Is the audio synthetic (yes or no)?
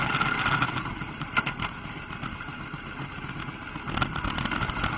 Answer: no